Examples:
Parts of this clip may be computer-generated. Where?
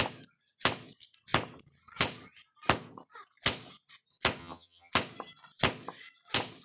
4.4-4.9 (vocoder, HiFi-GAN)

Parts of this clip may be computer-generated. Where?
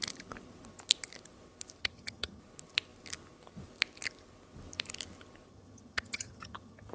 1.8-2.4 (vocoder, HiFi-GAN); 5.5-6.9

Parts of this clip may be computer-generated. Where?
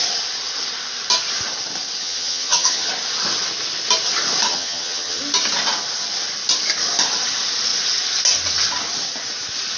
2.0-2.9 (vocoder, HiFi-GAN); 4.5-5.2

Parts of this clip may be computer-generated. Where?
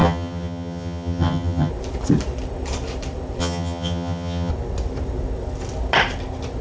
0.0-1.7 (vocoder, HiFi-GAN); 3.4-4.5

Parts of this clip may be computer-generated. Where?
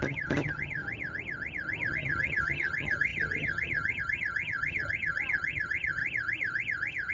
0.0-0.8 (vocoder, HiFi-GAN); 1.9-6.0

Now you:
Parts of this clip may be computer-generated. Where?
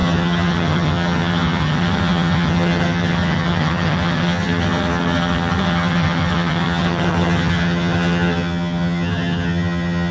0.0-10.1 (vocoder, HiFi-GAN)